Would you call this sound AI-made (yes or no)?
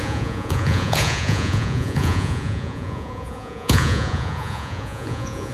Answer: yes